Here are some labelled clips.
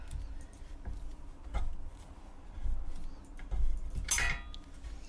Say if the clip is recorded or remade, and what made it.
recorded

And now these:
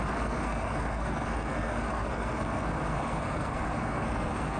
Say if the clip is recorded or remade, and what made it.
remade, codec, SNAC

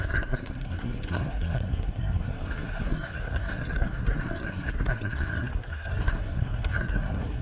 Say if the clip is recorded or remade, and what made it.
remade, codec, SNAC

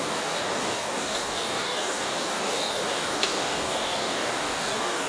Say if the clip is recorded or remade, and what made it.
remade, codec, DAC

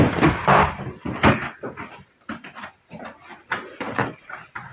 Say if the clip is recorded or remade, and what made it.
recorded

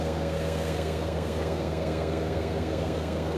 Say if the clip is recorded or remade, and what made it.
remade, codec, SNAC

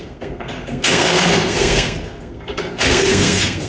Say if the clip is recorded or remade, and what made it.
remade, codec, SNAC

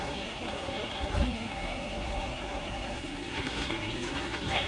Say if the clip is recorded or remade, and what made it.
remade, codec, SNAC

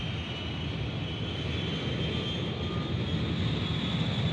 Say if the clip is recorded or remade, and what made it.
recorded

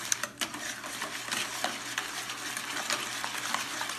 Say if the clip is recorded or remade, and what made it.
recorded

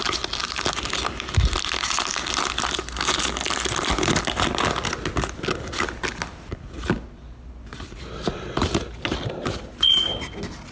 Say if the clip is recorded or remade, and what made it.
recorded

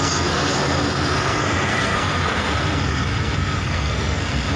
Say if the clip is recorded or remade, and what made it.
remade, codec, SNAC